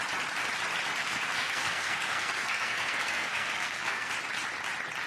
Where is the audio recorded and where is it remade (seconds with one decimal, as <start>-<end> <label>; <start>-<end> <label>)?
0.0-1.0 recorded; 1.0-4.1 remade; 4.1-5.1 recorded